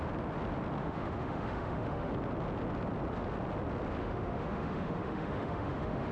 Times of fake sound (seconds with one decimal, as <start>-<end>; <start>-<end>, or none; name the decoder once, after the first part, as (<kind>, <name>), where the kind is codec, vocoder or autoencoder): 0.8-2.1 (autoencoder, DAC-VAE); 4.0-6.1